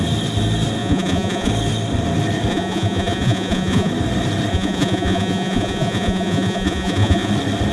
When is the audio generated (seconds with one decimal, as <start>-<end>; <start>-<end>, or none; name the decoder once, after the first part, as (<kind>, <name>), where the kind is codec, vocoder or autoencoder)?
0.8-1.5 (vocoder, Vocos); 2.5-3.9; 4.5-7.3